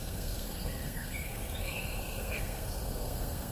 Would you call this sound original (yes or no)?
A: no